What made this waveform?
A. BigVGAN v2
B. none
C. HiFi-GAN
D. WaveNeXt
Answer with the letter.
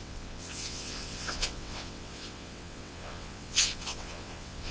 D